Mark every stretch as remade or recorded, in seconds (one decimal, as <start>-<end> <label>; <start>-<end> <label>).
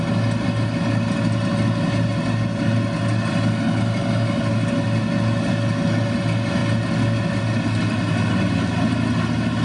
0.0-9.6 recorded